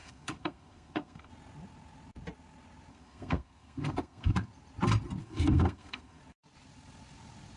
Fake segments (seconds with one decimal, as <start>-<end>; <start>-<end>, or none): 0.0-1.3; 2.9-4.5; 5.2-6.2